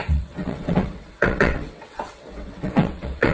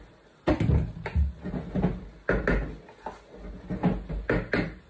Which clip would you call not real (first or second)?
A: first